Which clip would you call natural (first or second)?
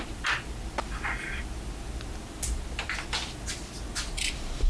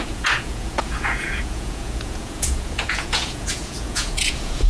first